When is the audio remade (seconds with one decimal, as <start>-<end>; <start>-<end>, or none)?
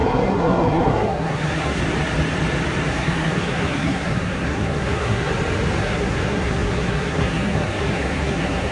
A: 0.0-1.8; 2.9-5.3; 5.8-8.7